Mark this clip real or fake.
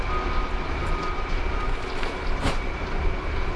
real